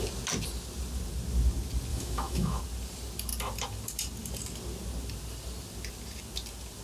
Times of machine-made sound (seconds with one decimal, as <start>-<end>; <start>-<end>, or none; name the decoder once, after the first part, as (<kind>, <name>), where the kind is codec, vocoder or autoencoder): 1.9-2.6 (autoencoder, DAC-VAE)